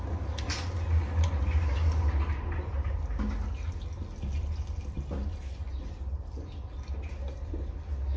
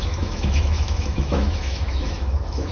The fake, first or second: second